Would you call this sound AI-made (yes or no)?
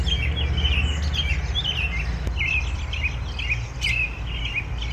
no